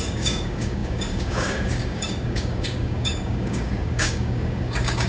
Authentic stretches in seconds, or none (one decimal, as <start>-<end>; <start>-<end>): none